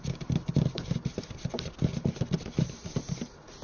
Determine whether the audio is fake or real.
real